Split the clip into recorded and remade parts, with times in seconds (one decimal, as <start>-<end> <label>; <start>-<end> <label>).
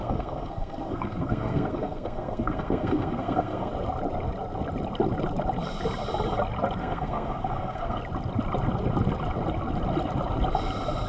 0.0-3.7 remade; 3.7-6.8 recorded; 6.8-8.0 remade; 8.0-11.1 recorded